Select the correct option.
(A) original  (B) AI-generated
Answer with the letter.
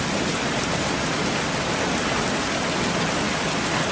A